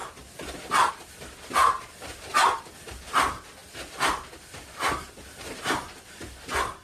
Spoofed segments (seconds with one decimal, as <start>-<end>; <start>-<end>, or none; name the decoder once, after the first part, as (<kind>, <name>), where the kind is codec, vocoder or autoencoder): none